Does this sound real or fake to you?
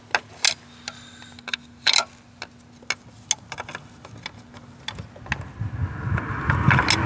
real